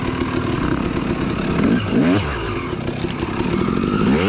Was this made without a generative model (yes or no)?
yes